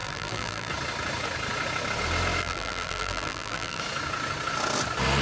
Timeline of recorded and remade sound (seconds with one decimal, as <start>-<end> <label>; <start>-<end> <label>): 0.0-0.7 remade; 0.7-2.4 recorded; 2.4-3.8 remade; 3.8-5.2 recorded